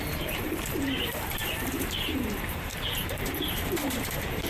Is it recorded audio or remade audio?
remade